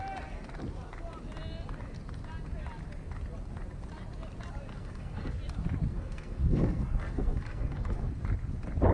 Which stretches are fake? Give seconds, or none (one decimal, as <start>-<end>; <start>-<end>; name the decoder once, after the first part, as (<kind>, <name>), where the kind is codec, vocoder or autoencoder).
4.7-5.3 (codec, SNAC); 5.9-8.1